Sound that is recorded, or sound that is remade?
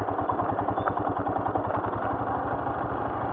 recorded